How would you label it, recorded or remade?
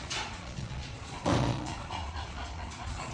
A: remade